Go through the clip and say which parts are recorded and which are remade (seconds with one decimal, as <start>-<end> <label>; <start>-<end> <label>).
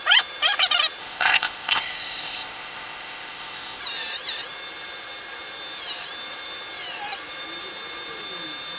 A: 0.0-1.0 recorded; 1.0-3.8 remade; 3.8-8.8 recorded